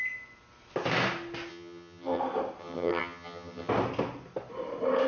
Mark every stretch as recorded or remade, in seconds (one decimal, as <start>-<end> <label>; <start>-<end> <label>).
0.0-1.5 recorded; 1.5-2.2 remade; 2.2-2.6 recorded; 2.6-3.7 remade; 3.7-5.1 recorded

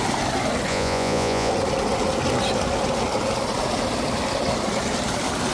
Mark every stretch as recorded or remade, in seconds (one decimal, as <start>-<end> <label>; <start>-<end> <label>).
0.0-0.7 recorded; 0.7-1.5 remade; 1.5-5.5 recorded

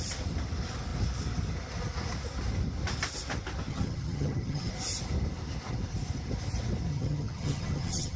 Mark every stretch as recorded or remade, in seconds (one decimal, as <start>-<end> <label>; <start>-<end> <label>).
0.0-3.7 recorded; 3.7-4.7 remade; 4.7-6.9 recorded; 6.9-8.2 remade

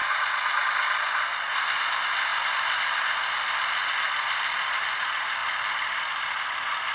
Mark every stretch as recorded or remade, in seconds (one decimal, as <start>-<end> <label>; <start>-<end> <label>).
0.0-2.3 recorded; 2.3-4.8 remade; 4.8-5.4 recorded; 5.4-6.2 remade; 6.2-6.9 recorded

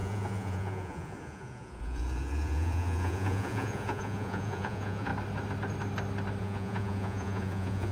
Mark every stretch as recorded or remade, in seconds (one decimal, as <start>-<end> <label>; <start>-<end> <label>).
0.0-5.1 remade; 5.1-6.4 recorded; 6.4-7.9 remade

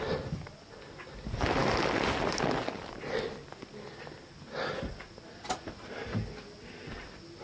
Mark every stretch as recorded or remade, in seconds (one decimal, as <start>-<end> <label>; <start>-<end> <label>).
0.0-7.4 recorded

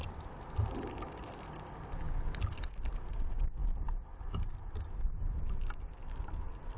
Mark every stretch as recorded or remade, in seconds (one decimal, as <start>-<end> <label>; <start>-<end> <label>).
0.0-6.8 recorded

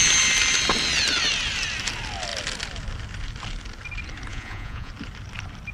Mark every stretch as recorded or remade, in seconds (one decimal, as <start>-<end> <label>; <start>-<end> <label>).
0.0-4.3 recorded; 4.3-4.9 remade; 4.9-5.7 recorded